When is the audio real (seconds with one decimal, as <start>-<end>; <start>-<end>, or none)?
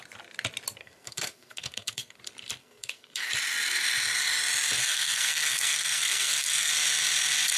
0.0-0.8; 2.2-2.6; 3.3-4.8; 6.7-7.6